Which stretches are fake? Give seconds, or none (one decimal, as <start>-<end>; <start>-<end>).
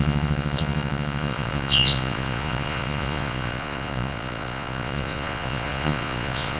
0.0-6.6